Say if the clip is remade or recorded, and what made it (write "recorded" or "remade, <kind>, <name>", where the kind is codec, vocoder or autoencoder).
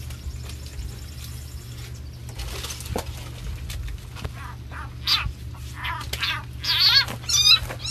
recorded